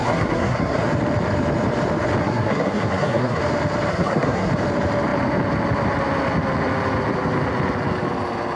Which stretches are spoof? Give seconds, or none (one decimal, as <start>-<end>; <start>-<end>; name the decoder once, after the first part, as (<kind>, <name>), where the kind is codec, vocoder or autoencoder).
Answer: 0.0-0.8 (codec, SNAC); 2.2-3.4; 3.9-4.5